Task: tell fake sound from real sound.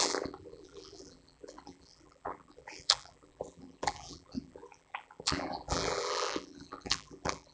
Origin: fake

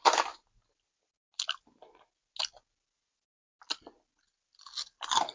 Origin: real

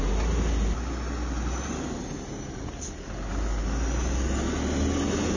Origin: real